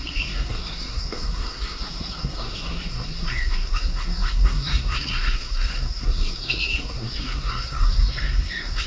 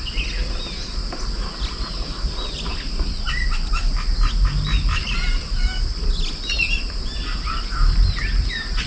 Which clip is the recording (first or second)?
second